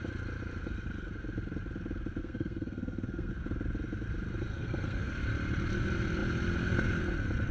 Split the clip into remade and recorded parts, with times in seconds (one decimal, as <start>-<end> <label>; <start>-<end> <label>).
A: 0.0-2.2 recorded; 2.2-3.3 remade; 3.3-4.5 recorded; 4.5-5.1 remade; 5.1-7.5 recorded